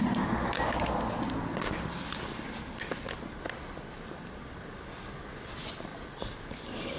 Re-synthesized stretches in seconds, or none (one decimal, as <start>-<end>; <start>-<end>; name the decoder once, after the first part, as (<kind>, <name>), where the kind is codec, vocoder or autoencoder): none